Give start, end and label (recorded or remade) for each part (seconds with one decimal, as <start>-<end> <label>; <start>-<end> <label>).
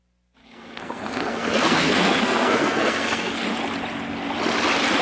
0.0-0.4 recorded; 0.4-3.4 remade; 3.4-5.0 recorded